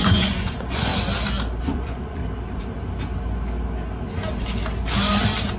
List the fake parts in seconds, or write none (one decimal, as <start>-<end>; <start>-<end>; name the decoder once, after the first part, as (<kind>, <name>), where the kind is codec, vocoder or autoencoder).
0.0-0.9 (vocoder, Vocos); 1.6-2.2